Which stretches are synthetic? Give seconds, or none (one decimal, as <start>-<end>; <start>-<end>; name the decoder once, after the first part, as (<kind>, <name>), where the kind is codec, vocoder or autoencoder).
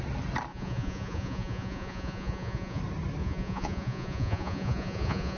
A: 0.5-2.8 (vocoder, Vocos); 3.2-5.4